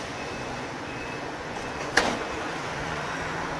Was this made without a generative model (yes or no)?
no